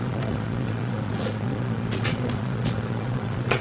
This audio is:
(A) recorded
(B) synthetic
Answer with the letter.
B